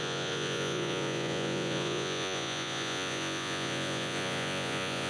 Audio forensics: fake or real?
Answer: fake